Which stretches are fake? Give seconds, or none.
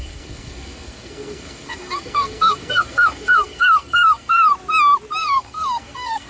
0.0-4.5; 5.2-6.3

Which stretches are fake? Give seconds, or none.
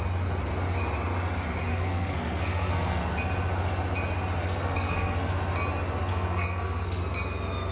1.7-3.0; 4.4-5.3; 6.1-7.0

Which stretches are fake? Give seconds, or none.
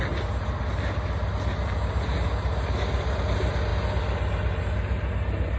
none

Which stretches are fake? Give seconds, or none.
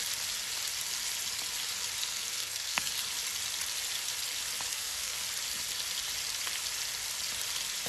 2.1-2.9; 4.7-5.2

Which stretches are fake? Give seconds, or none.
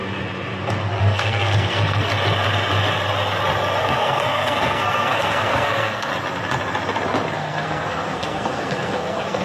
1.0-2.1; 3.8-6.1; 7.4-9.4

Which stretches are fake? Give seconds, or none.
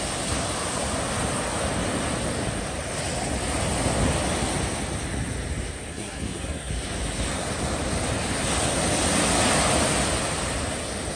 5.9-6.7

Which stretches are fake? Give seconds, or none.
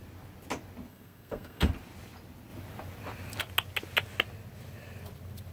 0.9-1.7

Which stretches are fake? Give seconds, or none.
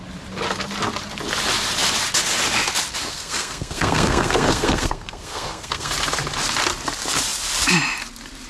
3.0-5.9